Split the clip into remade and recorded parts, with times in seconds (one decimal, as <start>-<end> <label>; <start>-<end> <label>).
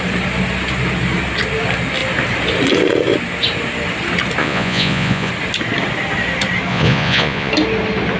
0.0-4.4 recorded; 4.4-5.3 remade; 5.3-6.7 recorded; 6.7-7.5 remade; 7.5-8.2 recorded